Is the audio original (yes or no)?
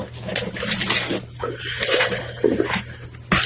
yes